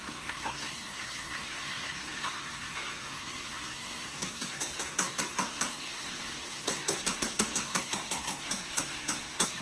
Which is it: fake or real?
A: fake